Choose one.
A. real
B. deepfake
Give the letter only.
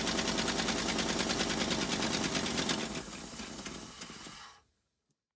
A